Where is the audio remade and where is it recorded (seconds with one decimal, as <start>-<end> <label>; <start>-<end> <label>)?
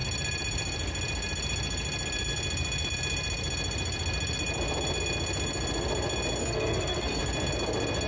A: 0.0-6.4 recorded; 6.4-7.2 remade; 7.2-8.1 recorded